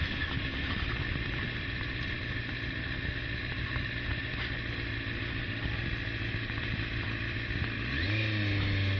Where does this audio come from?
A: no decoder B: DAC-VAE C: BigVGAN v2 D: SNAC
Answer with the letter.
A